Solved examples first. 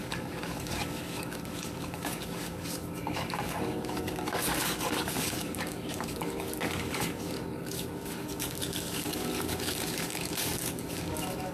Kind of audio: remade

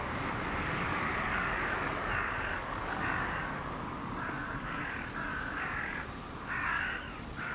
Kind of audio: remade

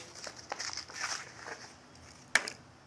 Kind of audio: recorded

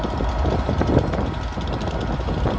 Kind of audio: recorded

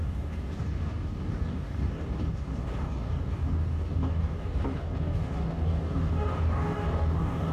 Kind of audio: remade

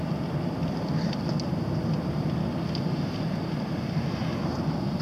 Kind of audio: recorded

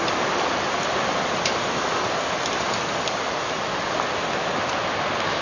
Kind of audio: recorded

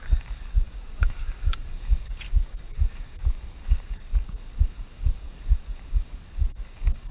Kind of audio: remade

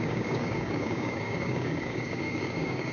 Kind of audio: remade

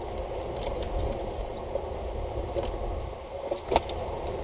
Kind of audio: recorded